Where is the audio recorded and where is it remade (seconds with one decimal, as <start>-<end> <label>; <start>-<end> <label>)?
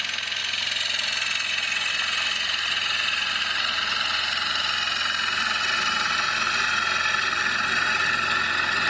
0.0-8.9 recorded